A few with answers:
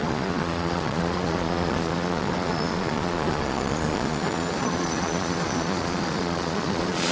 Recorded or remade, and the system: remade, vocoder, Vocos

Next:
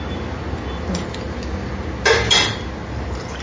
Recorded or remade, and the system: recorded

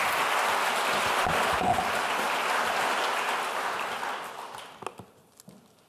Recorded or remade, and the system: recorded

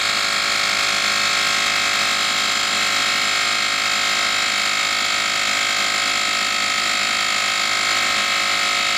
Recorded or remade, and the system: recorded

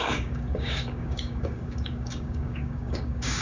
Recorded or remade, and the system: remade, codec, DAC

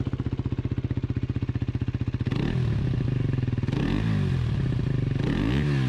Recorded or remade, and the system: recorded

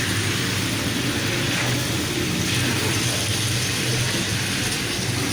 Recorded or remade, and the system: recorded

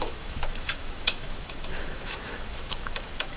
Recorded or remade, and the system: remade, autoencoder, DAC-VAE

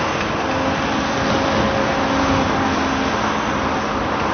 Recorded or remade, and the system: recorded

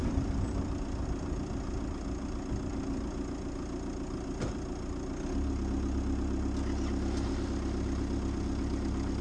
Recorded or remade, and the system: recorded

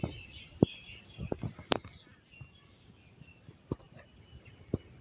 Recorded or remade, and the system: recorded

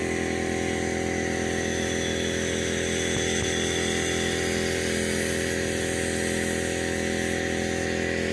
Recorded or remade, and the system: recorded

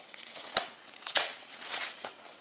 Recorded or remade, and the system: remade, vocoder, WaveNeXt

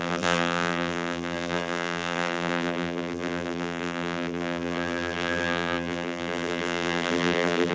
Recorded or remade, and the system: remade, vocoder, BigVGAN v2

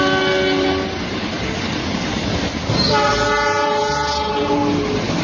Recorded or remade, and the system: recorded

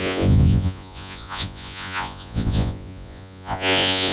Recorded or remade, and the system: remade, vocoder, Vocos